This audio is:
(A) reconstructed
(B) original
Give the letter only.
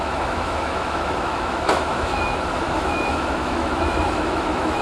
A